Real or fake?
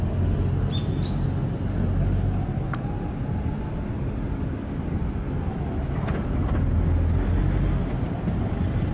real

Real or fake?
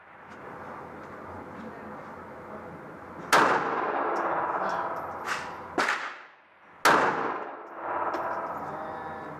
real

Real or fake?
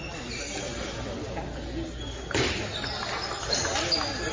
real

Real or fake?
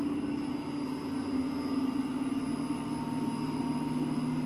real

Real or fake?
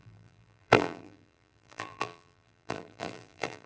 fake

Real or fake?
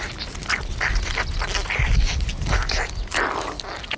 real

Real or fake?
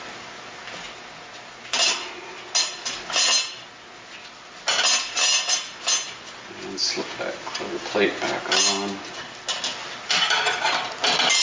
real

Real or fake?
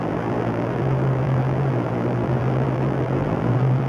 fake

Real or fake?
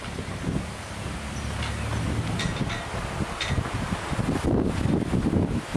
real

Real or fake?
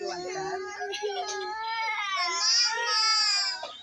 real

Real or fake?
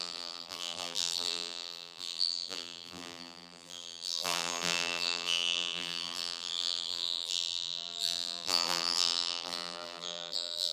fake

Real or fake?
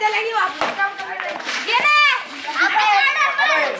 fake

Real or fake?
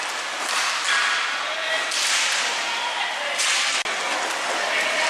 real